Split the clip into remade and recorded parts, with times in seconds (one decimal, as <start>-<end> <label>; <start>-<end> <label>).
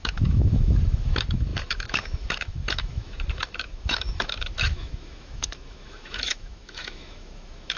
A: 0.0-7.8 remade